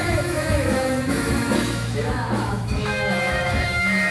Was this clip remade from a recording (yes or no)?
yes